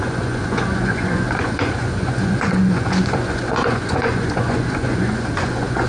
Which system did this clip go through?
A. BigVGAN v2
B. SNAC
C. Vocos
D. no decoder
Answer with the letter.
C